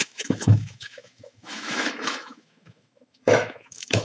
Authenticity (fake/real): fake